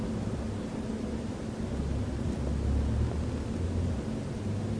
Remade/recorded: recorded